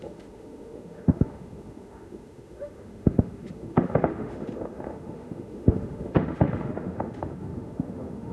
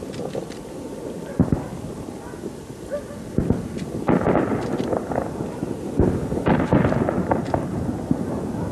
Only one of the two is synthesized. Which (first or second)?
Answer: first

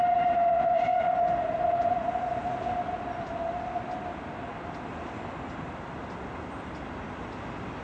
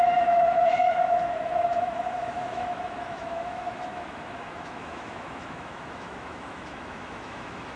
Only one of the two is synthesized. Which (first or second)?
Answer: second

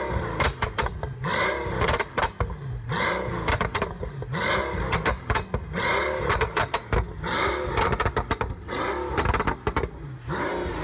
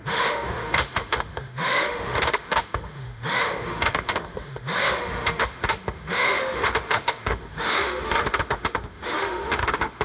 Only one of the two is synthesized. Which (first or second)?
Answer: second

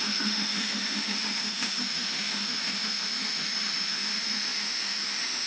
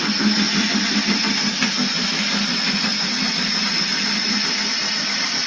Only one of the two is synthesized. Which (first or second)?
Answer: first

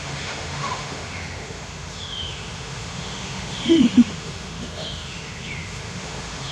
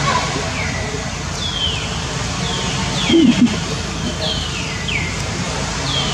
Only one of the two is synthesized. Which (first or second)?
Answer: first